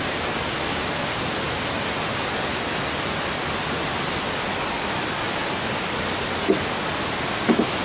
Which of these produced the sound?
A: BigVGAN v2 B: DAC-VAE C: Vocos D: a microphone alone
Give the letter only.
D